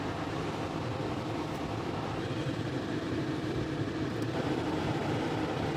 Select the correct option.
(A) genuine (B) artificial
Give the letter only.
B